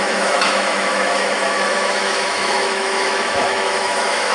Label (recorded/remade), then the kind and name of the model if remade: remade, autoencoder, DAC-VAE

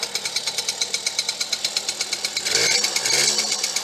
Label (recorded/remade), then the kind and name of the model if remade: recorded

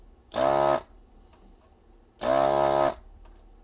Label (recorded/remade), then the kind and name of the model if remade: recorded